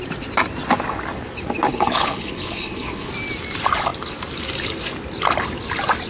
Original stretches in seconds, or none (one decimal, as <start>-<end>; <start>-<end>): 0.0-1.7; 3.1-6.1